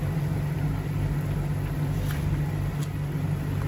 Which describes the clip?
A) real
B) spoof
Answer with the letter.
A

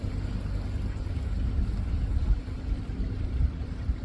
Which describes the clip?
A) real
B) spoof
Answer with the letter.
A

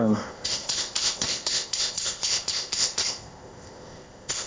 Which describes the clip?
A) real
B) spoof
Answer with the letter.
B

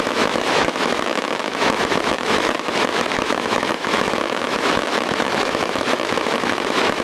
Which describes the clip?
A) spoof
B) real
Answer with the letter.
A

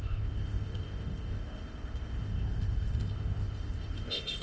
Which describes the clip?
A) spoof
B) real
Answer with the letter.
A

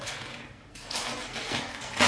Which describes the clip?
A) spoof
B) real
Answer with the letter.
A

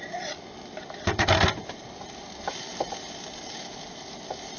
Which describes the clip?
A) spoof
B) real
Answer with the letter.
B